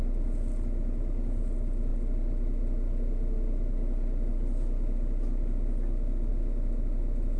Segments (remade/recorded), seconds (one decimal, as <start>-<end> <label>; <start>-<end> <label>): 0.0-7.4 recorded